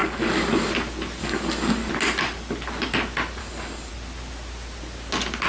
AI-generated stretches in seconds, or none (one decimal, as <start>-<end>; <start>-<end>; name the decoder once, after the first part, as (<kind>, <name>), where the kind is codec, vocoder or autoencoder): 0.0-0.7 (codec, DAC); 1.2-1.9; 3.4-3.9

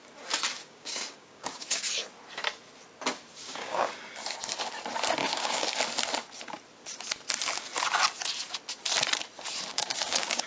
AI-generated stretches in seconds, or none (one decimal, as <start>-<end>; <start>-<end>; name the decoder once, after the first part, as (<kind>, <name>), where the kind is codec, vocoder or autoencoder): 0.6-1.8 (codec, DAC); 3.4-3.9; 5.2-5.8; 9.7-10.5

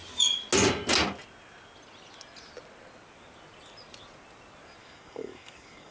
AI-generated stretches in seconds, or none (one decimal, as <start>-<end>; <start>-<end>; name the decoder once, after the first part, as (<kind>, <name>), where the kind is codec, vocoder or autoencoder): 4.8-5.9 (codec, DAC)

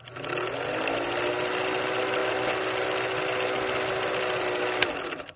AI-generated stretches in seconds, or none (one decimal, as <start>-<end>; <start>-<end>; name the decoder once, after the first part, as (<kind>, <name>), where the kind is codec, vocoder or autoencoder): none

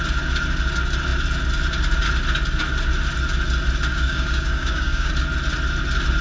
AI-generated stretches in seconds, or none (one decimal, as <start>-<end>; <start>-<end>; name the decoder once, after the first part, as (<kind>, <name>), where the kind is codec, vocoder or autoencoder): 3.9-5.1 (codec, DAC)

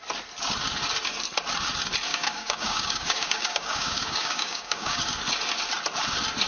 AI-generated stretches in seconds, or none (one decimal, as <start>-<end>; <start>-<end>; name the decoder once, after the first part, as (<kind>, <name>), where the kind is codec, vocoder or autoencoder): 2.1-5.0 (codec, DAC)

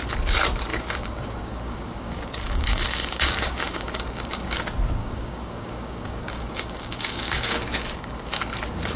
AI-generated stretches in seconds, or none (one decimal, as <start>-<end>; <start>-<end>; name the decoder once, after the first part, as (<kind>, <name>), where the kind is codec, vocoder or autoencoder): 0.7-4.6 (codec, DAC); 5.0-8.3

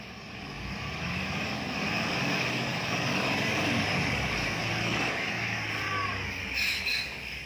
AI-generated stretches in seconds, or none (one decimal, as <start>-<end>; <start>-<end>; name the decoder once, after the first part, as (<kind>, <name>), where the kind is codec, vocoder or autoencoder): 0.0-7.5 (codec, DAC)